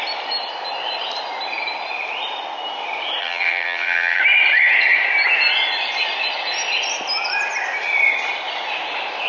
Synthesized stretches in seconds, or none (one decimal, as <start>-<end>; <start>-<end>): 3.2-4.2